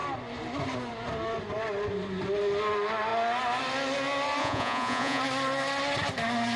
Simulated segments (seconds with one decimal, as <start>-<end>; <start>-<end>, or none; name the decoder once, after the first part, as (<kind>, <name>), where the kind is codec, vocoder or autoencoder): 4.4-5.2 (vocoder, Vocos)